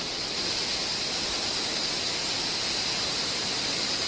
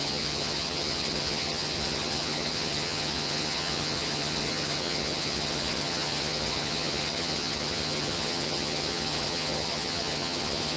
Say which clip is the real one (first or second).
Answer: first